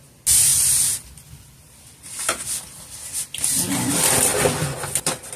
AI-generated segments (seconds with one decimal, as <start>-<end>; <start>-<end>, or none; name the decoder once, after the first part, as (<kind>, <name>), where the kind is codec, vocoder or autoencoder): 4.3-5.4 (vocoder, BigVGAN v2)